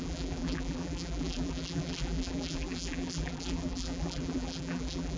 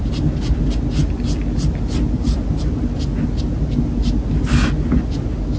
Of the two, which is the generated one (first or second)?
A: first